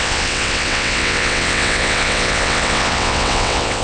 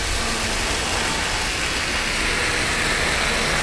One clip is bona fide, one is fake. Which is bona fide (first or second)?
second